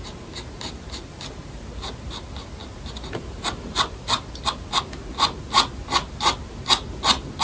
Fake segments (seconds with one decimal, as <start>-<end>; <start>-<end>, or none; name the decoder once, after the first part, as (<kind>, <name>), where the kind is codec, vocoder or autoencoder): none